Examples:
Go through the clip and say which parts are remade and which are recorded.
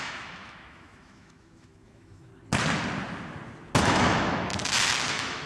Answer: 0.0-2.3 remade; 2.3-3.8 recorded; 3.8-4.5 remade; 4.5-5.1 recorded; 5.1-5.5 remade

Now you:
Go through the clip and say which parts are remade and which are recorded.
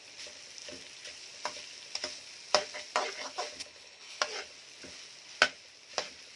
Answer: 0.0-3.6 recorded; 3.6-4.2 remade; 4.2-6.4 recorded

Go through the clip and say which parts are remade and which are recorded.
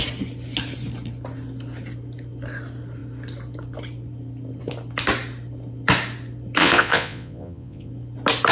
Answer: 0.0-6.6 recorded; 6.6-7.9 remade; 7.9-8.5 recorded